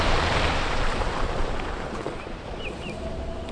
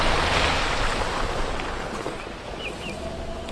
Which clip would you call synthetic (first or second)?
first